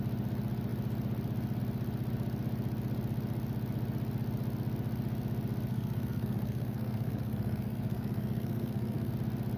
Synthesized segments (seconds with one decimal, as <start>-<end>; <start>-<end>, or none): 5.7-9.1

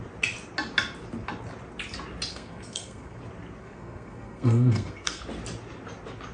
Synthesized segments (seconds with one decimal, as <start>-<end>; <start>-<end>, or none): 2.3-3.2; 3.6-5.2

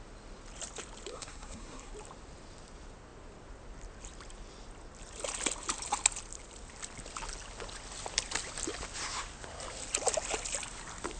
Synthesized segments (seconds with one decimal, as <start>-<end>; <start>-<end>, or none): 1.1-1.9

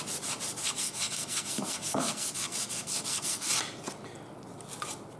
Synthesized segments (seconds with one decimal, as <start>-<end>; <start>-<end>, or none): 0.6-3.5

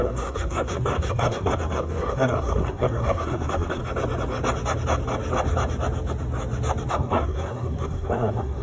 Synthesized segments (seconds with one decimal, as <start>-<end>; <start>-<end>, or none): 0.0-3.8; 6.9-8.6

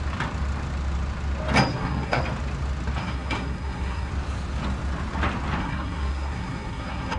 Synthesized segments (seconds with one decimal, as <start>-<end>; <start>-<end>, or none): 1.7-2.2; 3.0-4.1; 5.6-7.2

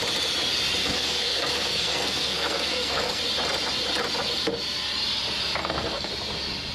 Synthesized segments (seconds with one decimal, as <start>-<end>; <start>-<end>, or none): 0.8-3.2; 5.6-6.1